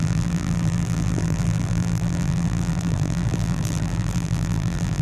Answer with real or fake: fake